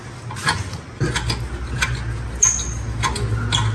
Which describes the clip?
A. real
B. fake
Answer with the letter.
A